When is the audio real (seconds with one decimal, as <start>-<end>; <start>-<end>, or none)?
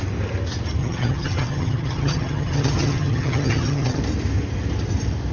0.0-0.8; 4.0-5.3